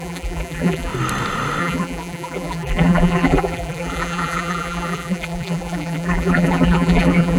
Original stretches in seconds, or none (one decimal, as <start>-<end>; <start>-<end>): 0.9-1.6